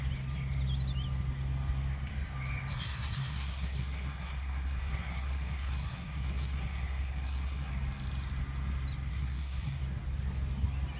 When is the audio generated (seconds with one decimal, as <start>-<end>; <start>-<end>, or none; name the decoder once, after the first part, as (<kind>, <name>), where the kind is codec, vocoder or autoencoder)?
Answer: 2.7-7.7 (codec, SNAC); 9.1-9.8